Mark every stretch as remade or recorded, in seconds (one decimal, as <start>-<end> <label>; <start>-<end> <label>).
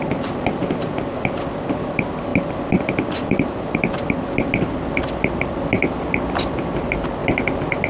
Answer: 0.0-7.9 recorded